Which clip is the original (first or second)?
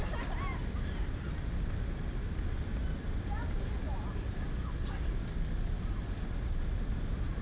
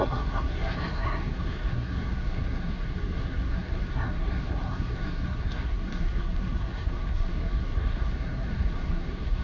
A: first